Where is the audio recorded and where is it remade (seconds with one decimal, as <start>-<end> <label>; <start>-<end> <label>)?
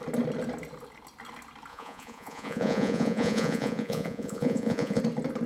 0.0-1.7 recorded; 1.7-5.0 remade; 5.0-5.5 recorded